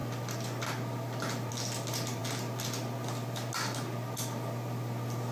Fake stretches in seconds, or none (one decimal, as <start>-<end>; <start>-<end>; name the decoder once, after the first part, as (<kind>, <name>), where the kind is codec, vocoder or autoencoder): none